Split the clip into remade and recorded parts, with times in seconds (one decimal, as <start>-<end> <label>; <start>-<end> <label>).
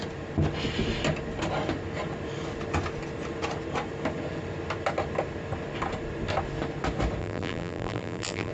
0.0-7.2 recorded; 7.2-8.5 remade